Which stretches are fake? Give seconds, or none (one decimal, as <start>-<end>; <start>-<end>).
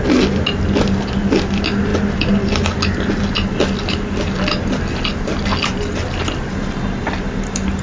none